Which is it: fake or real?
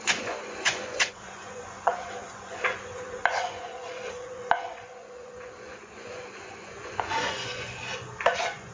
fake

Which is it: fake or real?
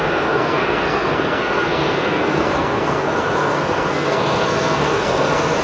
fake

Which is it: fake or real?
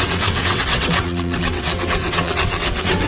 fake